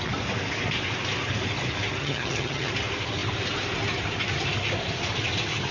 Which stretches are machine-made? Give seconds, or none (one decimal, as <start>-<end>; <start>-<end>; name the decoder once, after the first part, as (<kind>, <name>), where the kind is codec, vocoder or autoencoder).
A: 2.0-2.7 (vocoder, HiFi-GAN)